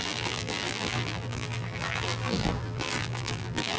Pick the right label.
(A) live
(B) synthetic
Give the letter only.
B